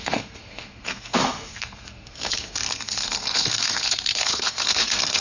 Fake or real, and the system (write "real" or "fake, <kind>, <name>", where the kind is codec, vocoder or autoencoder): fake, codec, SNAC